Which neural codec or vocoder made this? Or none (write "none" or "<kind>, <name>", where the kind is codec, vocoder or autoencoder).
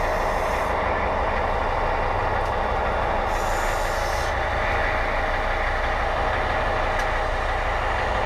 none